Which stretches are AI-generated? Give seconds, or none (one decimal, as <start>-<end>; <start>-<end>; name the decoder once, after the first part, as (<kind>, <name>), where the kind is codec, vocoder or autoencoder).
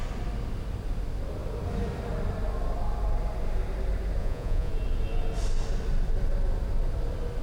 4.2-4.7 (vocoder, Vocos)